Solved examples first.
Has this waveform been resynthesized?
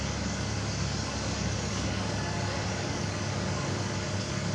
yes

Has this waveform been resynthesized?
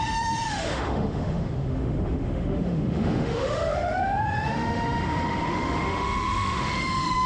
yes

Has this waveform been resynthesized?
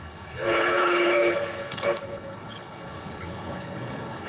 yes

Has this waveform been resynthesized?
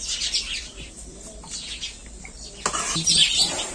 no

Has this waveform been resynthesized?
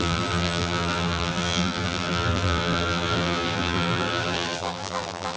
yes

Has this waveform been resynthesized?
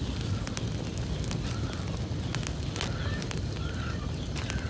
no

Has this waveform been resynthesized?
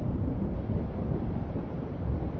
no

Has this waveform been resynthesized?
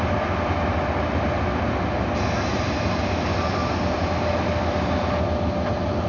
no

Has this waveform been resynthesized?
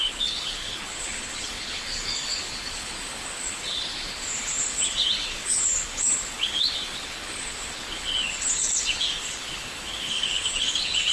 yes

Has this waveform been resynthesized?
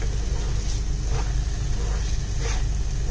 no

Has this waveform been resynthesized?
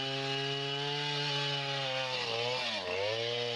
no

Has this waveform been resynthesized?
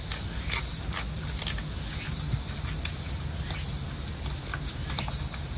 no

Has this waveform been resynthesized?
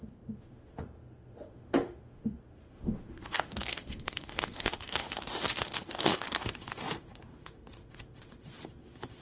yes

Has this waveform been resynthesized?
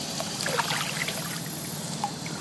no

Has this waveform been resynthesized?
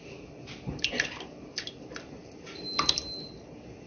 no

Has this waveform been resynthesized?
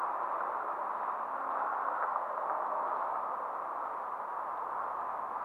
no